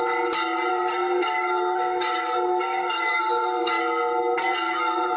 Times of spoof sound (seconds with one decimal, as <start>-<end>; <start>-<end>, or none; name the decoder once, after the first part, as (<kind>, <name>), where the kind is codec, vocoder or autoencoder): 0.7-3.8 (codec, SNAC); 4.4-5.2